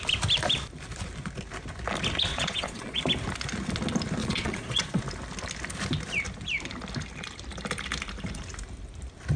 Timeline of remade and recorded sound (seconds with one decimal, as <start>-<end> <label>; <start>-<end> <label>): 0.0-2.3 recorded; 2.3-3.0 remade; 3.0-4.2 recorded; 4.2-5.0 remade; 5.0-9.4 recorded